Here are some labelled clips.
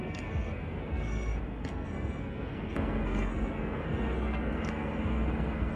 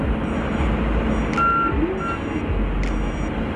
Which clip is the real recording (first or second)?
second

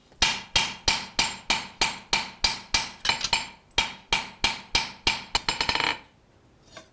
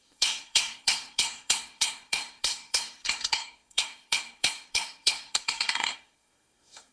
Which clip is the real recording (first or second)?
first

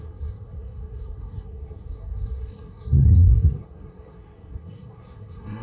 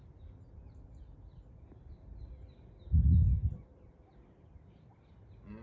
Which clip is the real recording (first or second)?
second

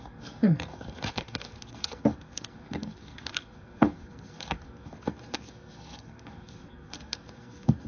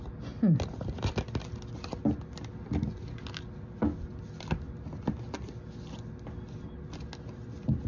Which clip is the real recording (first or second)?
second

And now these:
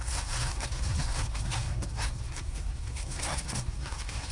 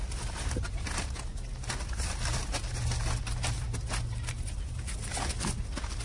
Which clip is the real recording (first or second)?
second